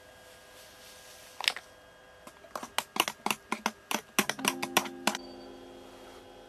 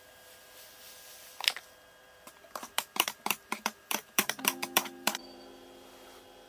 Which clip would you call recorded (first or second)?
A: first